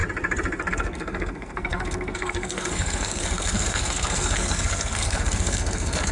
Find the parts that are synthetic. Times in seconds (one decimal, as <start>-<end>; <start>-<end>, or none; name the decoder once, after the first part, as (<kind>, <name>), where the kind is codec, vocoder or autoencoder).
0.7-6.1 (codec, SNAC)